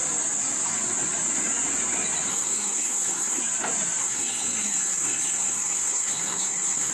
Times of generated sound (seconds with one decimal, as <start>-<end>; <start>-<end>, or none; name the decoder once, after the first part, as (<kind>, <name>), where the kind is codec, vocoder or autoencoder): 2.3-3.4 (codec, SNAC); 4.0-6.9